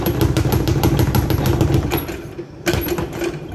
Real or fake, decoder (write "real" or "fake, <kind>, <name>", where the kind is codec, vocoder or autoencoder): real